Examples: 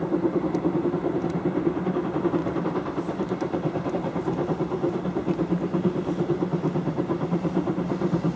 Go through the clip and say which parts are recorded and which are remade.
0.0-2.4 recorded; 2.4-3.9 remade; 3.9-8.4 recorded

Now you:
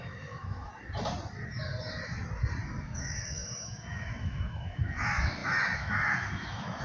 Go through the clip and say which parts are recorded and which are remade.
0.0-0.7 remade; 0.7-2.8 recorded; 2.8-6.8 remade